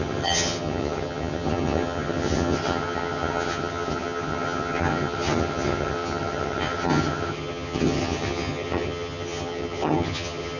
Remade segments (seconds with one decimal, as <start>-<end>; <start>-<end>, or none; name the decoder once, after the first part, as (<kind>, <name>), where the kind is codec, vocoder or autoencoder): 0.0-10.6 (vocoder, HiFi-GAN)